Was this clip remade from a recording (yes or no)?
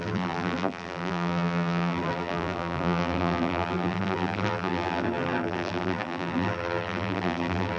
yes